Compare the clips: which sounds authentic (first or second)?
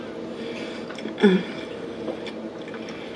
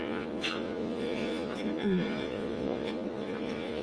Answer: first